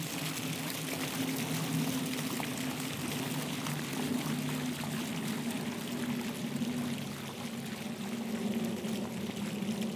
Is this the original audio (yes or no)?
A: yes